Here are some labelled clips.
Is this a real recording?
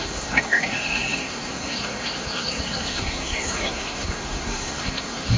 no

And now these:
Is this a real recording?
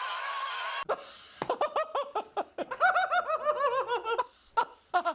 yes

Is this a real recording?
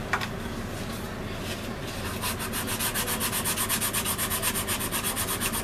yes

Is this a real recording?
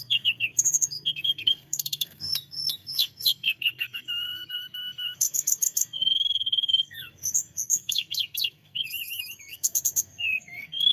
no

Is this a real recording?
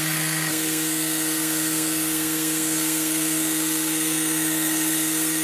no